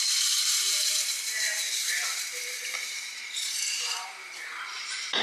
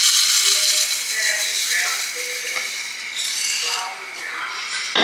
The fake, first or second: first